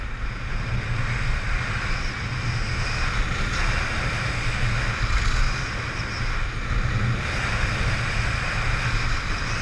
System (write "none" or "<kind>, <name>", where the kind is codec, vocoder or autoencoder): none